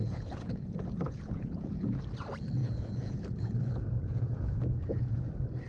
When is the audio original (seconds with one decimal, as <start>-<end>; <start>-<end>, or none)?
2.0-2.6; 5.3-5.7

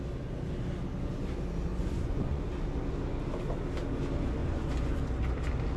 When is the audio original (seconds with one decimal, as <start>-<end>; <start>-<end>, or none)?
0.0-1.7; 2.4-4.4; 5.0-5.8